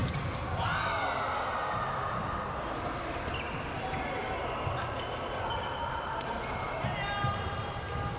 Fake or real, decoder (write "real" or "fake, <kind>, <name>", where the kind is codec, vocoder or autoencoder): real